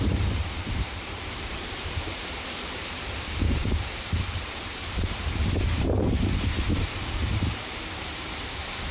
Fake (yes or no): yes